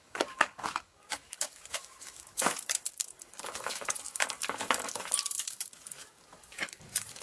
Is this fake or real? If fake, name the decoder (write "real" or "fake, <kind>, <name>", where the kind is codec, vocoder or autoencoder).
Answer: fake, codec, DAC